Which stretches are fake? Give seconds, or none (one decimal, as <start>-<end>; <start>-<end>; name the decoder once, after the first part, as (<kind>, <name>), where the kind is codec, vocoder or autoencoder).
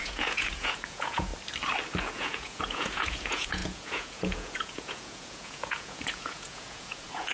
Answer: 0.0-1.3 (vocoder, Vocos); 2.0-7.3